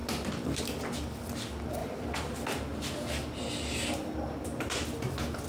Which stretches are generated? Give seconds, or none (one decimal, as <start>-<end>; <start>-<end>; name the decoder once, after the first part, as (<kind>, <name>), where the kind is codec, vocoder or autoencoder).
0.0-0.6 (vocoder, BigVGAN v2); 1.8-5.1